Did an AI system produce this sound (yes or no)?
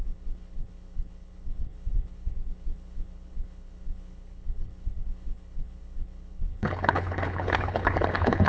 yes